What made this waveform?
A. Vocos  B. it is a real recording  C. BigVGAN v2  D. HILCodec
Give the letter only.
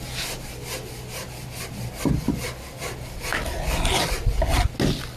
B